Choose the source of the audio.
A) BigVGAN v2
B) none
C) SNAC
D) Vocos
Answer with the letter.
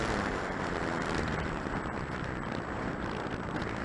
A